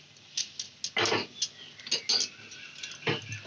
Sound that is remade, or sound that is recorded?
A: recorded